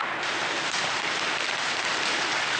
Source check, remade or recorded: recorded